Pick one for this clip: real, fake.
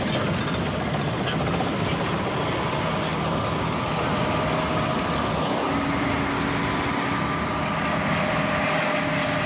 real